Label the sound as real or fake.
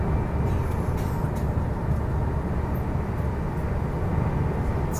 real